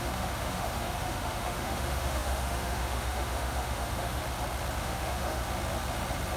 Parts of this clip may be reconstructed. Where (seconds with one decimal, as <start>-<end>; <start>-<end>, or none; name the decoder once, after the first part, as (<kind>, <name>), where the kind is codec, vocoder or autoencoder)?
0.0-4.2 (autoencoder, DAC-VAE); 4.8-5.4